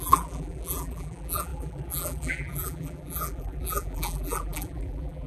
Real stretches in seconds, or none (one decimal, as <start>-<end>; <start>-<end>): none